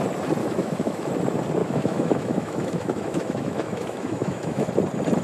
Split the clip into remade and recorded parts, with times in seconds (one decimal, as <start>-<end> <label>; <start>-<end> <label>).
0.0-0.4 recorded; 0.4-1.1 remade; 1.1-1.6 recorded; 1.6-4.7 remade; 4.7-5.2 recorded